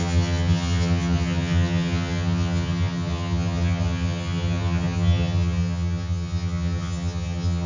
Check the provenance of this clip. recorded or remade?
remade